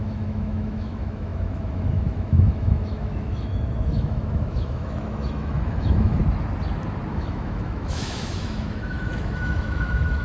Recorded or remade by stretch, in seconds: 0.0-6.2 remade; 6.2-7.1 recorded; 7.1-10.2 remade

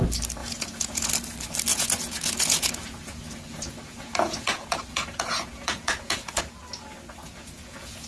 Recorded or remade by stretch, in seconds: 0.0-0.4 recorded; 0.4-1.1 remade; 1.1-1.7 recorded; 1.7-6.4 remade; 6.4-7.2 recorded; 7.2-8.1 remade

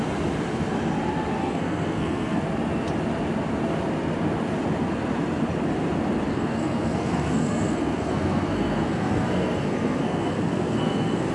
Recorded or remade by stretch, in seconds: 0.0-1.4 recorded; 1.4-2.4 remade; 2.4-6.3 recorded; 6.3-11.3 remade

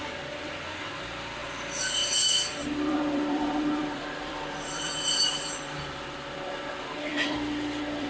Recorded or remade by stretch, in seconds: 0.0-1.4 recorded; 1.4-5.9 remade; 5.9-7.1 recorded; 7.1-8.1 remade

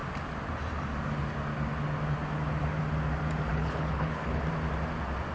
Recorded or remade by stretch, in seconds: 0.0-3.5 recorded; 3.5-4.4 remade; 4.4-5.3 recorded

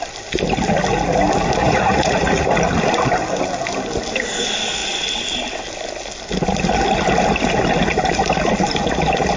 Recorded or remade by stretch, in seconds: 0.0-1.6 recorded; 1.6-2.5 remade; 2.5-9.4 recorded

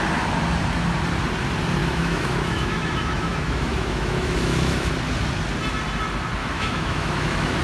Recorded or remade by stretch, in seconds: 0.0-1.8 recorded; 1.8-4.9 remade; 4.9-6.4 recorded; 6.4-7.6 remade

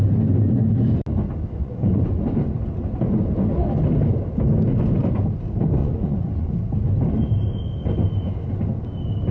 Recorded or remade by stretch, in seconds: 0.0-1.6 recorded; 1.6-2.2 remade; 2.2-5.8 recorded; 5.8-6.5 remade; 6.5-9.3 recorded